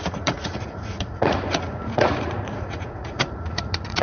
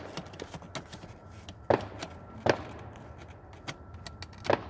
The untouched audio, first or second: second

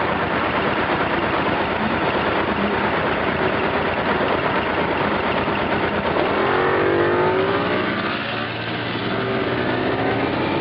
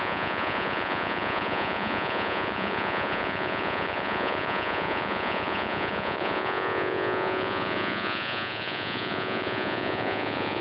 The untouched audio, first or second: first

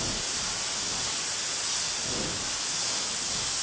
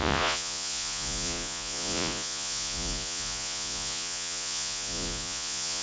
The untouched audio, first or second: first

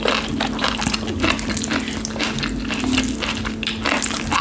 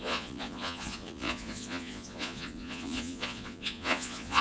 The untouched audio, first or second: first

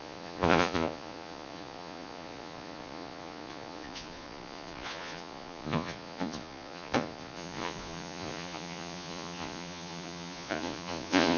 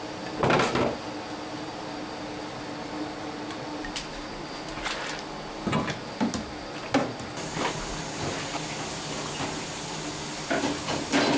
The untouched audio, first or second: second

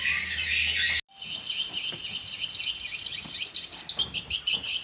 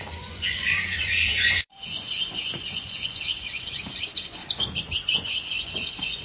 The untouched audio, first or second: first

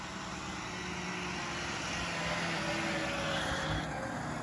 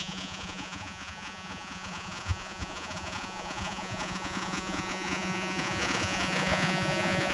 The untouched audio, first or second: first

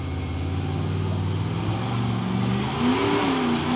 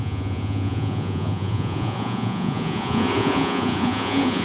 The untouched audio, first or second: first